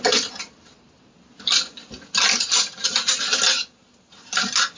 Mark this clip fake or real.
real